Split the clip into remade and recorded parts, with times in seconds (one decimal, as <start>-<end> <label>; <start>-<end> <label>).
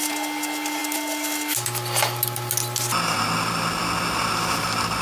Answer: 0.0-5.0 recorded